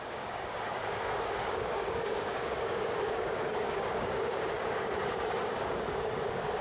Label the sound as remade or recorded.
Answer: remade